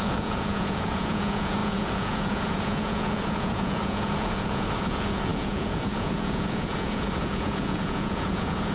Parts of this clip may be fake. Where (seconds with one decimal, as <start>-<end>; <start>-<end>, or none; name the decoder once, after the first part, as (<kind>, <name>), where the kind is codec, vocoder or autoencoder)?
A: 0.0-8.7 (vocoder, Vocos)